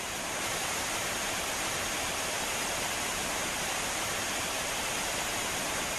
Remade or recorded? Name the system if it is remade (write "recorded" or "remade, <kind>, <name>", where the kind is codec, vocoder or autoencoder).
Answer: remade, vocoder, BigVGAN v2